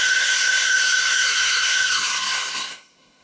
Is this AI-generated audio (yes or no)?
yes